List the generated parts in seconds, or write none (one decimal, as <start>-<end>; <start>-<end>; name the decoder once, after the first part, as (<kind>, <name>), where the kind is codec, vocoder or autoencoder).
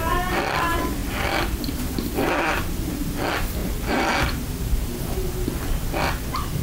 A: none